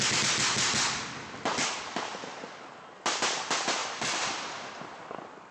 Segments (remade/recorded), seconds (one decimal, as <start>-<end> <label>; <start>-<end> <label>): 0.0-3.8 recorded; 3.8-5.0 remade; 5.0-5.5 recorded

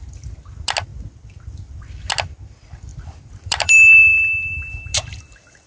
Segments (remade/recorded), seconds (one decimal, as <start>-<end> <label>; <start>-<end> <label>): 0.0-0.9 recorded; 0.9-2.0 remade; 2.0-2.9 recorded; 2.9-5.7 remade

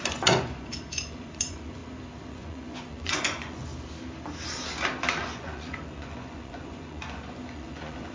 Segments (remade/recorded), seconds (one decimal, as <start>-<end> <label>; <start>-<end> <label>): 0.0-1.8 remade; 1.8-2.3 recorded; 2.3-3.7 remade; 3.7-5.2 recorded; 5.2-8.1 remade

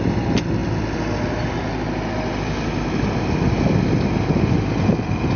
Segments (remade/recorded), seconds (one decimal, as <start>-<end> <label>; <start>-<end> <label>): 0.0-5.4 recorded

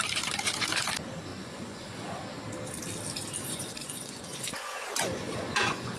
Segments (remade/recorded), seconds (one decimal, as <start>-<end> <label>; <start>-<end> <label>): 0.0-1.3 recorded; 1.3-2.2 remade; 2.2-3.4 recorded; 3.4-6.0 remade

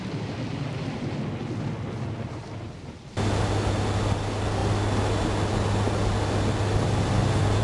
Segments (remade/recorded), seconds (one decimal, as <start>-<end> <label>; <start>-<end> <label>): 0.0-7.6 recorded

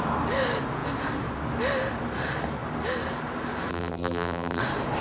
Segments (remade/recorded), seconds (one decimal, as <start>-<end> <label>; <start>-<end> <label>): 0.0-3.7 recorded; 3.7-4.6 remade; 4.6-5.0 recorded